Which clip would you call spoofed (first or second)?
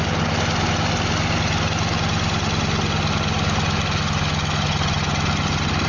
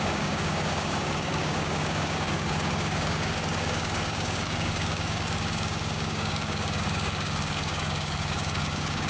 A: second